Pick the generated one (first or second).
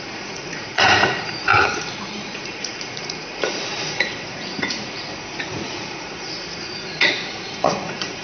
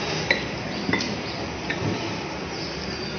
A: first